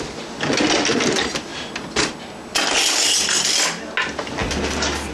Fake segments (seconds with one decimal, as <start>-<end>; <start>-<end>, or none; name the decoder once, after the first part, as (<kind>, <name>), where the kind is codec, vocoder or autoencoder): none